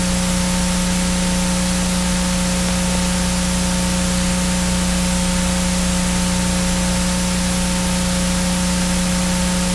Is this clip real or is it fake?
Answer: real